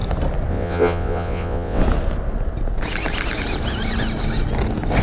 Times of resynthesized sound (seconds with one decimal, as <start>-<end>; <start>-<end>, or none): 0.5-1.8